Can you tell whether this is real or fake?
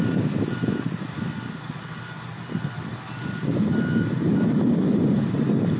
real